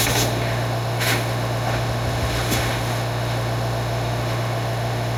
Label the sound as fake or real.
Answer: fake